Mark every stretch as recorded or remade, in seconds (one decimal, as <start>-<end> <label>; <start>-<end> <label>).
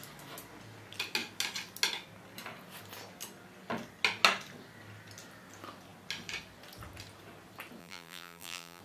0.0-7.8 recorded; 7.8-8.8 remade